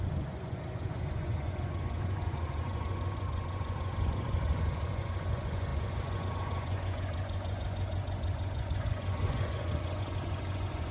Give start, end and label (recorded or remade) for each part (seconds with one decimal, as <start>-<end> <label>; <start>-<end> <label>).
0.0-10.9 remade